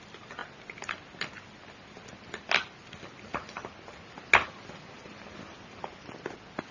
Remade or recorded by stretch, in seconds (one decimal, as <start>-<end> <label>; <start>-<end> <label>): 0.0-6.7 recorded